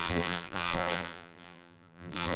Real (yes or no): no